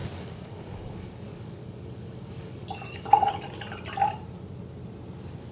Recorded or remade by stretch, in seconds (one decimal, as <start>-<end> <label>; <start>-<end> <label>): 0.0-3.3 remade; 3.3-5.5 recorded